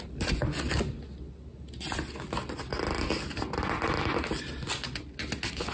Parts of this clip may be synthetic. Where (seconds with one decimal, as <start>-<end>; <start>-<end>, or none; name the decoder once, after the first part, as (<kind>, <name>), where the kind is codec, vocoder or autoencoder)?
none

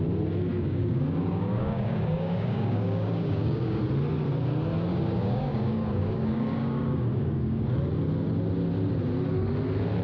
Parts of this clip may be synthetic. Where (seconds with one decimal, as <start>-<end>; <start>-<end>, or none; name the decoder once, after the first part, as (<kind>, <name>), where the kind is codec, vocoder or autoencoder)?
0.5-3.8 (codec, DAC); 4.9-7.8

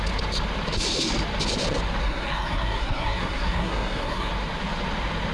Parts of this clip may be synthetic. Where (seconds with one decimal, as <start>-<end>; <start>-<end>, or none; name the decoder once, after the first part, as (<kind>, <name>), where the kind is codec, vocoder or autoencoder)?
2.0-4.3 (codec, SNAC)